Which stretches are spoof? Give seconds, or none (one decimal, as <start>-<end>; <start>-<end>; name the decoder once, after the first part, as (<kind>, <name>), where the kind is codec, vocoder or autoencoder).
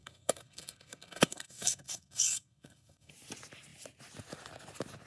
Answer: 0.0-3.1 (codec, SNAC)